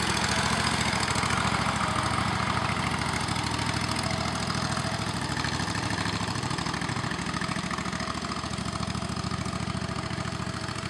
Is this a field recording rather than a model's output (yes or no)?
yes